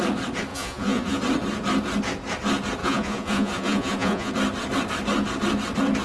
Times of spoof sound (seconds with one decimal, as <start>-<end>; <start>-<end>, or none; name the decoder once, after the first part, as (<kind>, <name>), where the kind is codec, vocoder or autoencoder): 0.5-1.2 (vocoder, Vocos); 2.8-4.3